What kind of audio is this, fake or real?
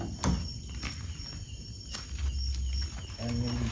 real